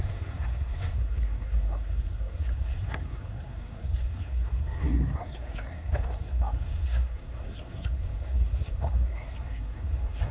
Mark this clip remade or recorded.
remade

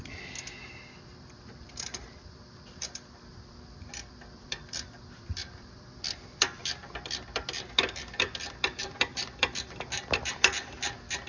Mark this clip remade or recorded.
remade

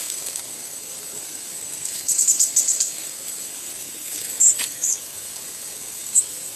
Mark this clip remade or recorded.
remade